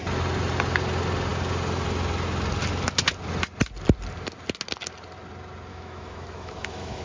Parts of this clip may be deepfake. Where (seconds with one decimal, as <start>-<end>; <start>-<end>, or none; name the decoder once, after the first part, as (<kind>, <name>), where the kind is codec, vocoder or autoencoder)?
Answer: 5.7-7.0 (autoencoder, DAC-VAE)